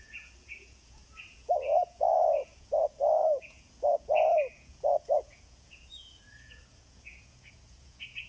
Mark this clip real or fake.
fake